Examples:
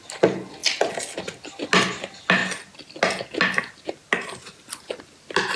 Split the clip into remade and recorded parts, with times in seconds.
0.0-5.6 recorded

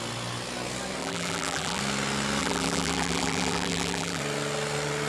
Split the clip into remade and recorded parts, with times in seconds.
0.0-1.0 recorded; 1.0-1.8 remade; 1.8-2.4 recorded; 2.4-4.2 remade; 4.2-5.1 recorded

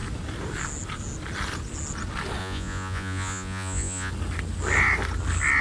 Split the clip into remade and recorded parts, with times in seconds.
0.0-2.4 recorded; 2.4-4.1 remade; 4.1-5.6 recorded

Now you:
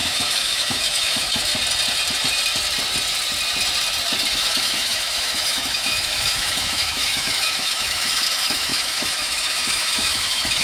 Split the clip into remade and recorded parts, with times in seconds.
0.0-1.5 remade; 1.5-4.3 recorded; 4.3-10.6 remade

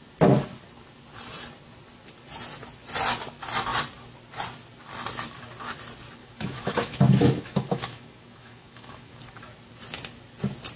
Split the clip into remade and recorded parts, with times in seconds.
0.0-6.2 recorded; 6.2-9.2 remade; 9.2-10.8 recorded